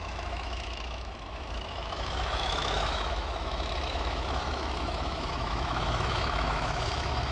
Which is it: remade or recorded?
remade